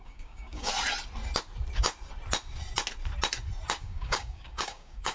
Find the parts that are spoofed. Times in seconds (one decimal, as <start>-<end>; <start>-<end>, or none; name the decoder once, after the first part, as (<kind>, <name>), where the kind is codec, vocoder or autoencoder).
0.0-0.7 (codec, DAC); 3.8-5.1

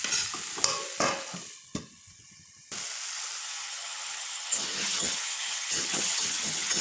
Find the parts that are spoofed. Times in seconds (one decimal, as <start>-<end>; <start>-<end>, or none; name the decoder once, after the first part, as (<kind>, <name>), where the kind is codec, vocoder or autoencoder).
3.4-6.8 (vocoder, HiFi-GAN)

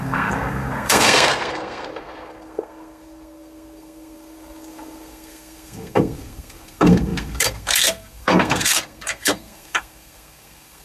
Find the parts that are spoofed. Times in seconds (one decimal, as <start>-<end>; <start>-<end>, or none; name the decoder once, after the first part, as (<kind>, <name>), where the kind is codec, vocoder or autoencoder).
0.0-10.8 (codec, SNAC)

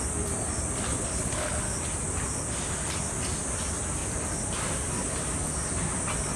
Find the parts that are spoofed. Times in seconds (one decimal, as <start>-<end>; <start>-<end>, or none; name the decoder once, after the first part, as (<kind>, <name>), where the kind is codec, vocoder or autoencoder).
0.9-1.6 (codec, HILCodec)

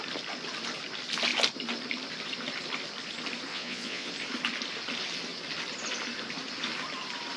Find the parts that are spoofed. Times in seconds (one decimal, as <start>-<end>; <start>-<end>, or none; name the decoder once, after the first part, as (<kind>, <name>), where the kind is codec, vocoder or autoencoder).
3.5-4.1 (vocoder, Vocos)